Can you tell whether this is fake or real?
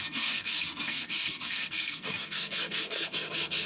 fake